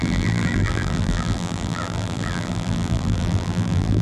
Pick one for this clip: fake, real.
fake